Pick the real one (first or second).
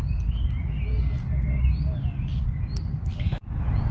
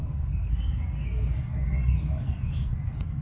first